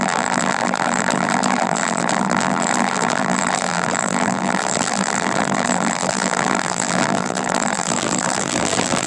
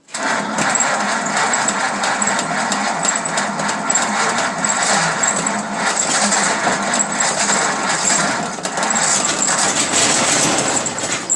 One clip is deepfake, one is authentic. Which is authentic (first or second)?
second